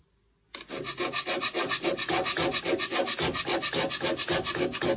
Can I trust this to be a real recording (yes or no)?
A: yes